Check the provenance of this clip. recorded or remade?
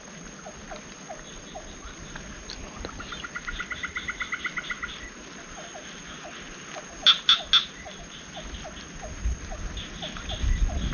recorded